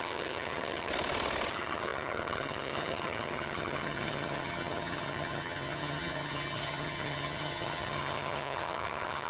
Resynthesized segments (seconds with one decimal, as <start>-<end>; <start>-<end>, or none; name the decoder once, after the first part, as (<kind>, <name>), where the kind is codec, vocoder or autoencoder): 0.0-0.9 (vocoder, HiFi-GAN); 1.5-9.3